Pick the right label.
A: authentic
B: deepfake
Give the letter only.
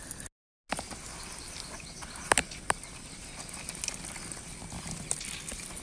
A